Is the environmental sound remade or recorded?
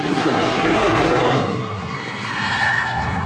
remade